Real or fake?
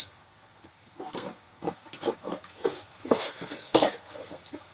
fake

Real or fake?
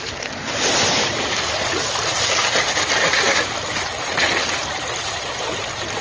real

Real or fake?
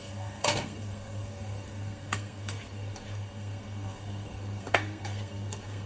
fake